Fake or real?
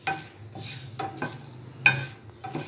real